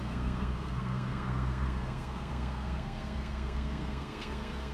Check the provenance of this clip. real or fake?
fake